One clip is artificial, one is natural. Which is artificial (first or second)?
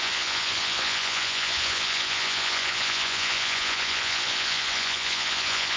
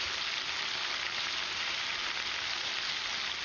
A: first